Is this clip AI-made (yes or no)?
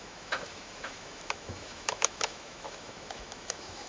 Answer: yes